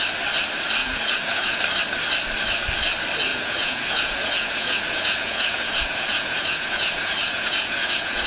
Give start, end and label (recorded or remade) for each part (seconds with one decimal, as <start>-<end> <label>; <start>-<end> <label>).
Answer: 0.0-0.8 recorded; 0.8-1.6 remade; 1.6-3.3 recorded; 3.3-8.3 remade